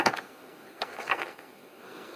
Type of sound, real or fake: fake